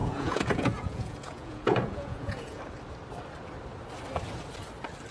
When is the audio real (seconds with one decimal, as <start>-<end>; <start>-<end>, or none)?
2.6-5.1